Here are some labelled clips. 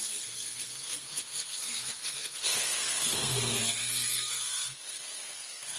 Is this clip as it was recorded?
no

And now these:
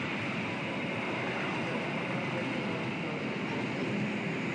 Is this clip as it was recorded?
yes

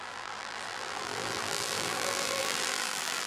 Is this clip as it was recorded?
no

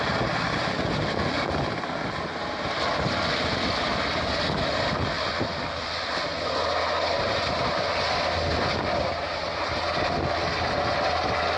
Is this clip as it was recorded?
yes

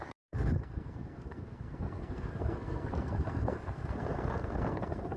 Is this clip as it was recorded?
no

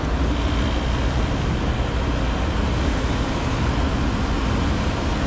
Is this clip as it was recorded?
yes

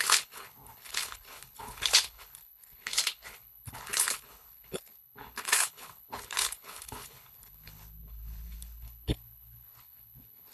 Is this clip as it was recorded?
no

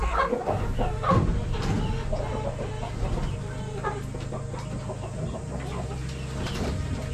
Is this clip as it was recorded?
yes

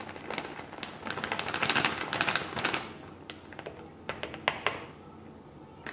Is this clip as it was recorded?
yes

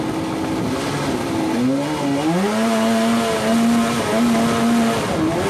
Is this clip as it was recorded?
yes